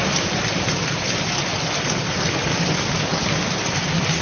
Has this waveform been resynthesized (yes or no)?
no